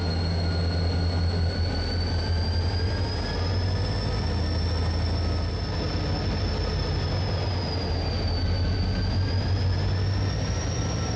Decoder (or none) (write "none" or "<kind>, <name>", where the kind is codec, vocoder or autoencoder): none